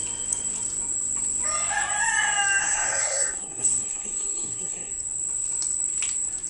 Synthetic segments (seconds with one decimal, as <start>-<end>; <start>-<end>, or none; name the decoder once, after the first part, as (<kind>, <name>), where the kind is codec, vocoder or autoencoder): 2.6-4.9 (codec, SNAC)

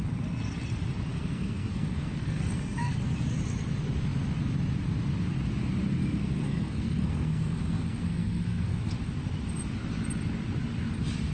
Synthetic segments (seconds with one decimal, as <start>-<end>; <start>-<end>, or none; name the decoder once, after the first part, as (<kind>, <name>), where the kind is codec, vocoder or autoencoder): 1.1-3.0 (codec, SNAC); 6.0-8.9

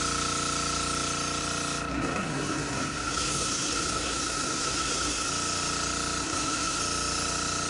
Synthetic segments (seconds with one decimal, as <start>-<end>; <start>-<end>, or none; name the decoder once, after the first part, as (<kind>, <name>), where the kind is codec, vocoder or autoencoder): 1.9-5.3 (codec, SNAC); 6.2-6.8

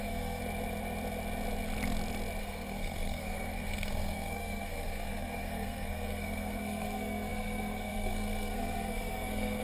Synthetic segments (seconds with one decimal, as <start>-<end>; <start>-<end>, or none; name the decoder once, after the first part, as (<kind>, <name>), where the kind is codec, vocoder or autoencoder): 0.0-0.4 (codec, SNAC); 2.4-9.6

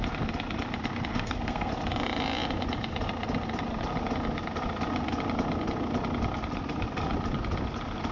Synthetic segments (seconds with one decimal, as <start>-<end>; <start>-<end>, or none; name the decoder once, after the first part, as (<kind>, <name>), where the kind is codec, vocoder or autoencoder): 1.1-1.7 (codec, SNAC)

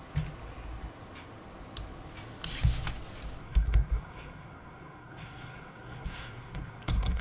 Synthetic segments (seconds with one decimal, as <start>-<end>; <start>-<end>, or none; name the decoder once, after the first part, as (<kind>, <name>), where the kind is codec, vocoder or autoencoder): 3.4-7.2 (codec, SNAC)

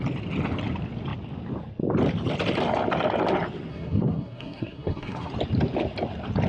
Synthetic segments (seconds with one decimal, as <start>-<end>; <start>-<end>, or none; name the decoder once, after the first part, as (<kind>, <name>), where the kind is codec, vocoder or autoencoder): 3.7-5.3 (codec, SNAC)